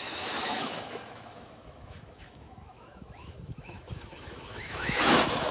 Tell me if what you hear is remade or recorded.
remade